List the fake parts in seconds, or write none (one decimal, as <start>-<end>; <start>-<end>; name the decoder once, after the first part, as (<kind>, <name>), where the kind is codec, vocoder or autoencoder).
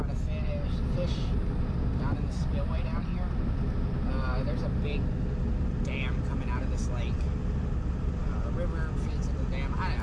none